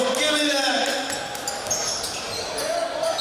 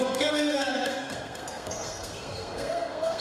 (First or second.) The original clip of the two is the first